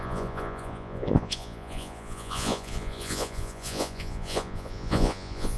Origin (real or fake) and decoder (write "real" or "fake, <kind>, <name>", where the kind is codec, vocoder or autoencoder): fake, vocoder, Vocos